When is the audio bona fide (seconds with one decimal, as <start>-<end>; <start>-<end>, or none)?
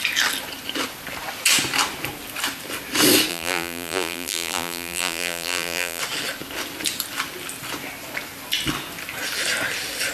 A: 0.0-3.3; 6.0-10.1